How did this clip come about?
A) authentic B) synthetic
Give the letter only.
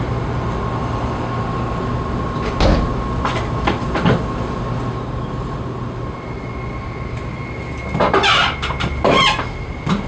A